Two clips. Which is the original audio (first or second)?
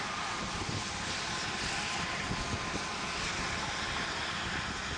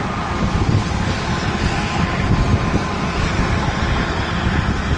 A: second